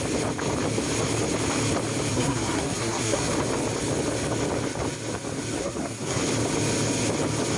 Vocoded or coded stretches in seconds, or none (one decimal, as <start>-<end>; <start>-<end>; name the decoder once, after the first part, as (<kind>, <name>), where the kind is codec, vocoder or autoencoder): 2.1-3.3 (codec, SNAC); 5.6-6.2

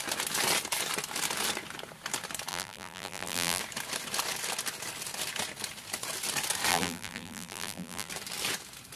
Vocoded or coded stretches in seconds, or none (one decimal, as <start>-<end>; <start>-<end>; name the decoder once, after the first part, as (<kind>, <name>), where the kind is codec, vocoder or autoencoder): 2.5-3.6 (vocoder, BigVGAN v2); 6.7-8.1

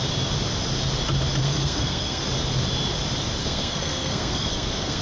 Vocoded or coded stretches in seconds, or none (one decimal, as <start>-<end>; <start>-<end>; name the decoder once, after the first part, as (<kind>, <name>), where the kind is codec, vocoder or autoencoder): 1.4-2.2 (codec, SNAC); 3.4-5.0

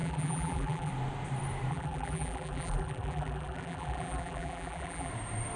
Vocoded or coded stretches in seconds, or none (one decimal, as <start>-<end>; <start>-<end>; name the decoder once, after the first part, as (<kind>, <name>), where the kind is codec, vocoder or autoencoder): 0.0-0.9 (vocoder, BigVGAN v2); 1.7-5.1

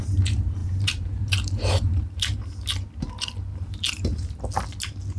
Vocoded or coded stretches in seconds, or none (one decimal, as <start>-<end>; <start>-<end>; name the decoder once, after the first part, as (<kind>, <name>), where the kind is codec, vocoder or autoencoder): 0.6-2.4 (vocoder, BigVGAN v2); 3.5-4.4

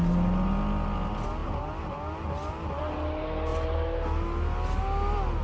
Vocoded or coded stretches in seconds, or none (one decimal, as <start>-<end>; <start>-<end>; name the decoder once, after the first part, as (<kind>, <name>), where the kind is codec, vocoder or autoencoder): none

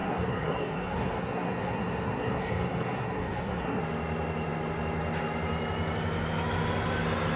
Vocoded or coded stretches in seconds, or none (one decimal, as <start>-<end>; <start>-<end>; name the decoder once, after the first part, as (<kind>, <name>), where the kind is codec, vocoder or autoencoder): 0.0-3.8 (codec, SNAC)